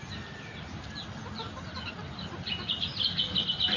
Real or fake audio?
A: real